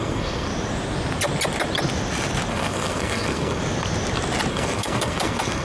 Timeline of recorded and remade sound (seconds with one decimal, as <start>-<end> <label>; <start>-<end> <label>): 0.0-0.5 remade; 0.5-2.5 recorded; 2.5-3.6 remade; 3.6-4.5 recorded; 4.5-5.6 remade

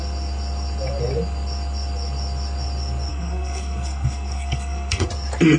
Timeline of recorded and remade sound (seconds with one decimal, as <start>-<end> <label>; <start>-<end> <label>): 0.0-3.1 recorded; 3.1-5.1 remade; 5.1-5.6 recorded

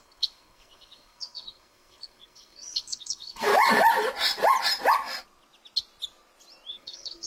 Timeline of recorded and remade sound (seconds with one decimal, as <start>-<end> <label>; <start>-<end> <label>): 0.0-3.5 remade; 3.5-6.7 recorded; 6.7-7.3 remade